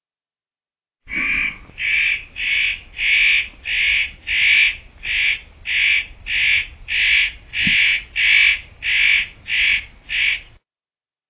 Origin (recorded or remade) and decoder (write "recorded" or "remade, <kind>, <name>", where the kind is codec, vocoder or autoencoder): recorded